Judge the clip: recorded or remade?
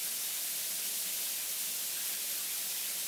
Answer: recorded